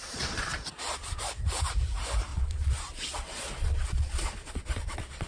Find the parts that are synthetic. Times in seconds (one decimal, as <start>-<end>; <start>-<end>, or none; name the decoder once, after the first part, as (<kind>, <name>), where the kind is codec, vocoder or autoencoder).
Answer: 0.0-1.2 (vocoder, Vocos); 2.3-5.3